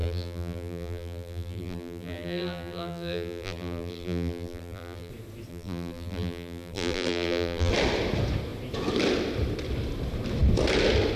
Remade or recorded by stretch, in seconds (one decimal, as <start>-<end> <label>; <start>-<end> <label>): 0.0-5.1 remade; 5.1-5.5 recorded; 5.5-7.7 remade; 7.7-11.2 recorded